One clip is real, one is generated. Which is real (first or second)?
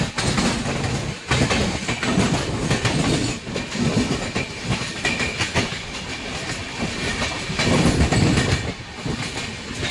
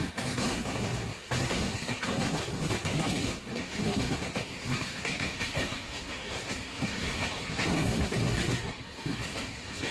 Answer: first